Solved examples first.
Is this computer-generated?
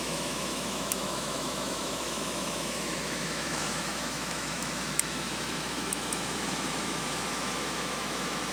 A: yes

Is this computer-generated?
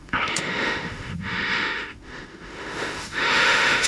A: yes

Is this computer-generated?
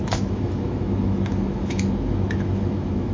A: yes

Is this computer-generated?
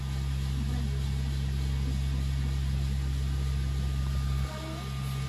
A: no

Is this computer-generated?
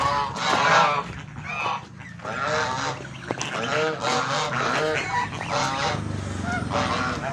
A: no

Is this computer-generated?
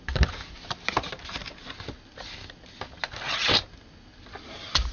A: no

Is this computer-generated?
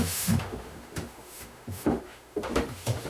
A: yes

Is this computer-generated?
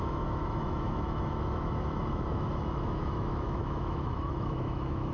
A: yes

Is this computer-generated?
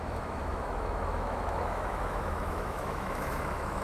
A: yes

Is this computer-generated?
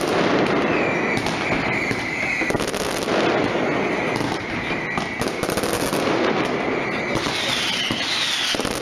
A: no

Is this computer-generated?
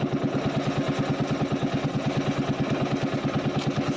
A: no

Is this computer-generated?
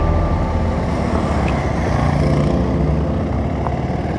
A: no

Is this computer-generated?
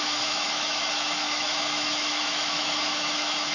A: yes